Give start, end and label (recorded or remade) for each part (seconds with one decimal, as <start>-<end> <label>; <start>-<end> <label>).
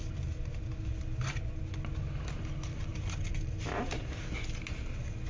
0.0-0.6 remade; 0.6-2.9 recorded; 2.9-4.0 remade; 4.0-5.3 recorded